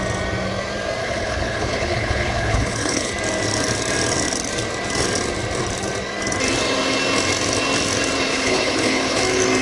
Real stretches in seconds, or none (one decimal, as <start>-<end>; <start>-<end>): 0.0-1.0; 3.1-8.3; 9.2-9.6